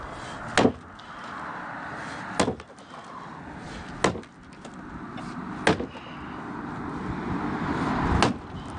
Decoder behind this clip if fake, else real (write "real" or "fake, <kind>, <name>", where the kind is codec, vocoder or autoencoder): real